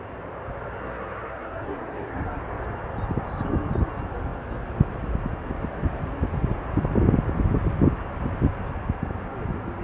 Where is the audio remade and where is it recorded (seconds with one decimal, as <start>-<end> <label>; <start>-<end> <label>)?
0.0-0.8 recorded; 0.8-2.4 remade; 2.4-9.8 recorded